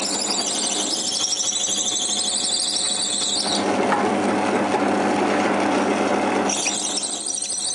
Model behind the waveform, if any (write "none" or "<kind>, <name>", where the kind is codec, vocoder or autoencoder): none